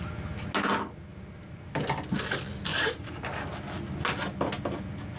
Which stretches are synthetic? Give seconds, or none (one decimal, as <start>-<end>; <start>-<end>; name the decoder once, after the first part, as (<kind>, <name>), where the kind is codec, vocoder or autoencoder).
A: 1.1-1.8 (vocoder, BigVGAN v2); 2.7-3.3